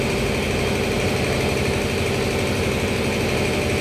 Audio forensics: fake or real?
real